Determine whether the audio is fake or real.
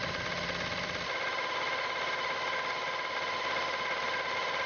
real